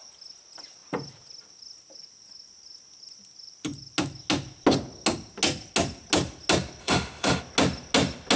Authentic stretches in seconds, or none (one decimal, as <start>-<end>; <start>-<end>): 0.0-6.8; 7.4-8.4